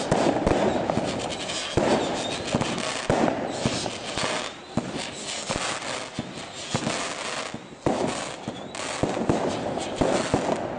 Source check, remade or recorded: recorded